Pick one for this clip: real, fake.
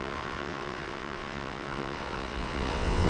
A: fake